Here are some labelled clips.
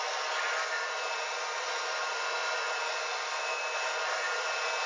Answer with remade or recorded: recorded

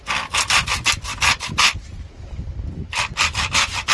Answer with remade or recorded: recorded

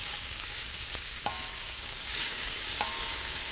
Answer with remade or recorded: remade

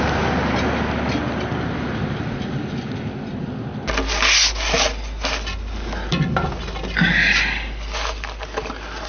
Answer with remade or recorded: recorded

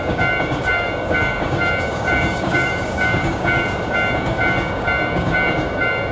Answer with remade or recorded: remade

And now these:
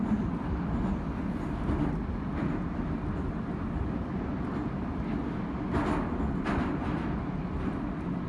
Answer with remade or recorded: recorded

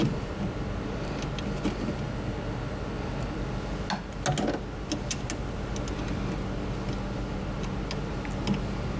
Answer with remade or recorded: recorded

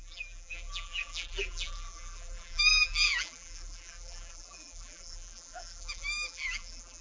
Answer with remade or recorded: remade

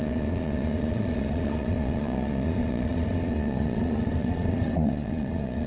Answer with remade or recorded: remade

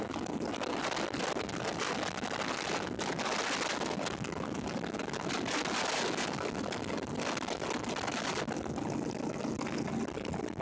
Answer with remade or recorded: recorded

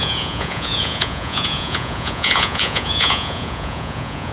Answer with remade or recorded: remade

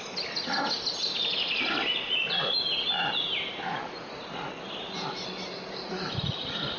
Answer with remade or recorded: recorded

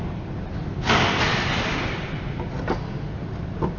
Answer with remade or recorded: recorded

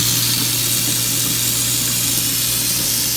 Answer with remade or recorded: recorded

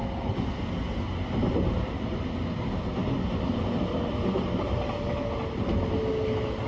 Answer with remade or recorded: recorded